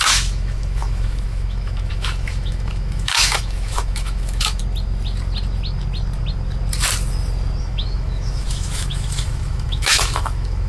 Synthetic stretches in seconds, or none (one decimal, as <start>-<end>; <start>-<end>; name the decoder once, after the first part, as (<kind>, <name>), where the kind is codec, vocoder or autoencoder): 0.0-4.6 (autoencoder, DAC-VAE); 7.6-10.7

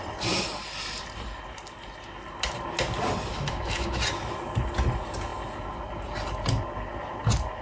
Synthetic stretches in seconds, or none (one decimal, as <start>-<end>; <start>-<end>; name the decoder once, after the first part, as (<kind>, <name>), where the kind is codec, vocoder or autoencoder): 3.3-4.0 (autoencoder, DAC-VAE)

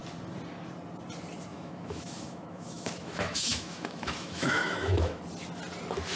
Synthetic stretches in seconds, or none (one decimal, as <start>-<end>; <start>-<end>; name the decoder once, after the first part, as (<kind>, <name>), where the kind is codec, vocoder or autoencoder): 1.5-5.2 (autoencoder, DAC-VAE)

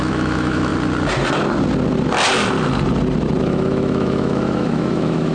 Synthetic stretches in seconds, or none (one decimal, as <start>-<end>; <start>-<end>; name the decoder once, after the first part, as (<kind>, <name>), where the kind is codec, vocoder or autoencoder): 0.0-0.7 (autoencoder, DAC-VAE); 3.4-5.3